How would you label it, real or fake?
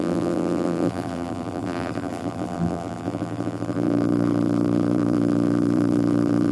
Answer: fake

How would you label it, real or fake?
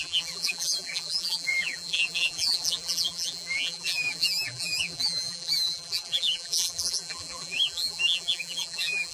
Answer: fake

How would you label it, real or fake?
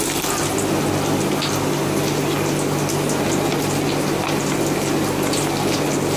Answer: real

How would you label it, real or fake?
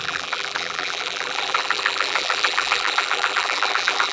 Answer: fake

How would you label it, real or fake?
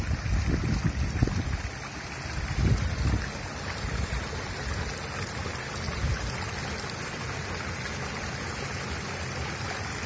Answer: real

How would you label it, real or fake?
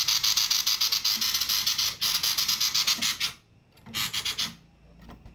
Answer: real